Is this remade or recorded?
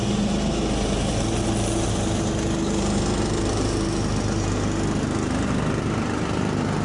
recorded